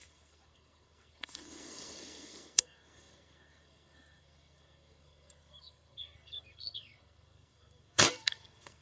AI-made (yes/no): yes